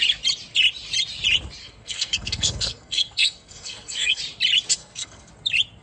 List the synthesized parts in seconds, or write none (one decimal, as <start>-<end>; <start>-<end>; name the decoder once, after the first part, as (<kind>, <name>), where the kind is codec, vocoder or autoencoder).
1.6-4.2 (codec, SNAC); 4.8-5.3